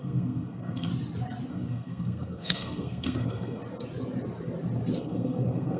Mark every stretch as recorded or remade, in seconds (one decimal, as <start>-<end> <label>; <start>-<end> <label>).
0.0-0.9 remade; 0.9-1.5 recorded; 1.5-3.6 remade; 3.6-5.0 recorded; 5.0-5.8 remade